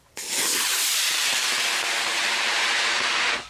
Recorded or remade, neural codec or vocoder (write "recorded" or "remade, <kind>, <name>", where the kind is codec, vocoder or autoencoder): remade, vocoder, BigVGAN v2